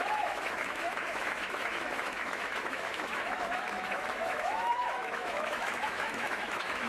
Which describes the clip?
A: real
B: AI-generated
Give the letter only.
B